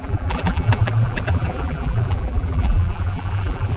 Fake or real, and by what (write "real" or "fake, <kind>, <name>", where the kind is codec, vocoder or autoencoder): fake, vocoder, BigVGAN v2